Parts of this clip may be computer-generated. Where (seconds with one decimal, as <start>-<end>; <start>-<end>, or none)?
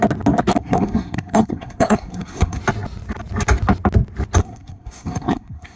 0.6-2.6; 4.4-5.8